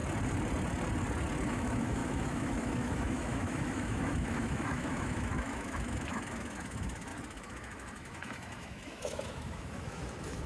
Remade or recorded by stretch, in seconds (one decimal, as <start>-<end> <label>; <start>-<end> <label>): 0.0-1.5 recorded; 1.5-10.5 remade